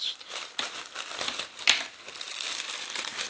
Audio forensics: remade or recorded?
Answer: recorded